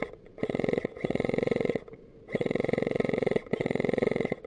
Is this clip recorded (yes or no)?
no